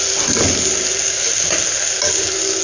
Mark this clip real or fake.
real